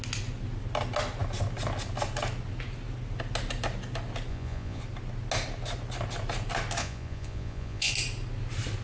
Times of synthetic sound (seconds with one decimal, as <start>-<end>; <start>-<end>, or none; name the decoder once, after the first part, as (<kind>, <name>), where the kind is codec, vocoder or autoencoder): 4.3-4.8 (vocoder, Vocos); 6.8-7.9